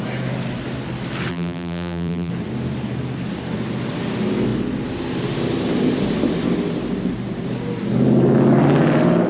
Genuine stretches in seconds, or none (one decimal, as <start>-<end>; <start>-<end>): 0.0-1.3; 2.3-9.3